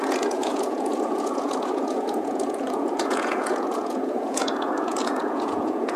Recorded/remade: remade